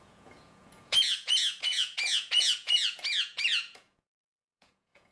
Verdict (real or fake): fake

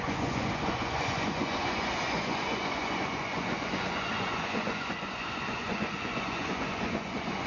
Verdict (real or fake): fake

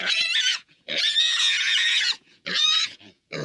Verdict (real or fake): fake